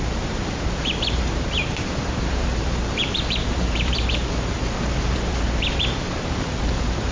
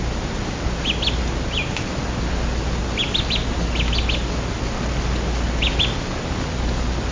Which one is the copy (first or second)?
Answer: first